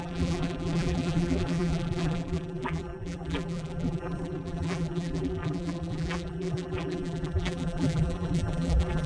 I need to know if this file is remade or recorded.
remade